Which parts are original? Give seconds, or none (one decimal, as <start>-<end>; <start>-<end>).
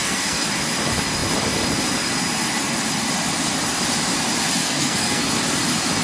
0.5-4.6; 5.2-6.0